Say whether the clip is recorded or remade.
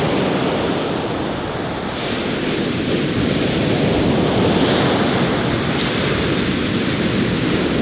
recorded